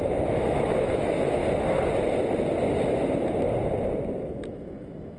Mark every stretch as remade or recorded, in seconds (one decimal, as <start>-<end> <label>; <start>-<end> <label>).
0.0-1.4 remade; 1.4-4.5 recorded; 4.5-5.2 remade